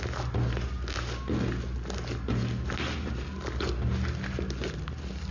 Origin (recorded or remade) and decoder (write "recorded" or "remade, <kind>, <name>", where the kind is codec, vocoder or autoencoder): recorded